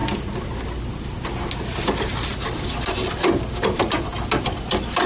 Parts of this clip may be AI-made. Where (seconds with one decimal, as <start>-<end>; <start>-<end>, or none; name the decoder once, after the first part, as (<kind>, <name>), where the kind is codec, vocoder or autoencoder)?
none